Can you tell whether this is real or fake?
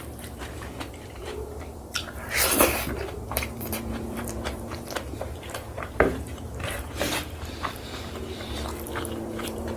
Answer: fake